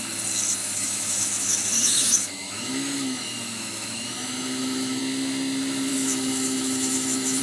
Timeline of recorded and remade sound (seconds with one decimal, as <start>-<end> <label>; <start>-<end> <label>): 0.0-0.6 recorded; 0.6-5.0 remade; 5.0-5.9 recorded; 5.9-7.4 remade